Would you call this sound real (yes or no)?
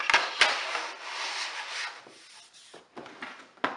yes